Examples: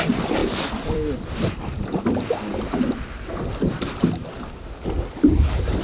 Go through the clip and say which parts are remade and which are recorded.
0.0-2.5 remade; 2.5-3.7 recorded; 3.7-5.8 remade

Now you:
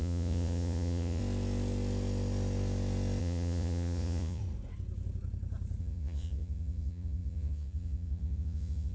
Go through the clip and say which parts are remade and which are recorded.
0.0-1.2 remade; 1.2-3.2 recorded; 3.2-4.4 remade; 4.4-5.8 recorded; 5.8-8.9 remade

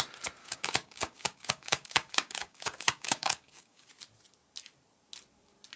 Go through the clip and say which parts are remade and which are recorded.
0.0-0.4 recorded; 0.4-3.9 remade; 3.9-5.8 recorded

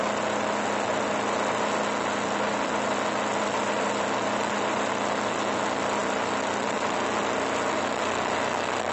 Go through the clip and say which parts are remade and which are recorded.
0.0-8.9 recorded

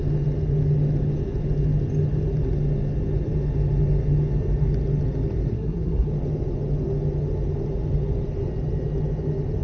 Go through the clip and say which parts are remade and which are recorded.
0.0-5.5 recorded; 5.5-6.1 remade; 6.1-9.6 recorded

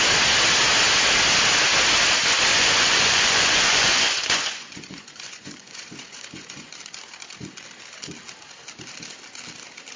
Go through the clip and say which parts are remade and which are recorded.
0.0-2.5 recorded; 2.5-6.7 remade; 6.7-10.0 recorded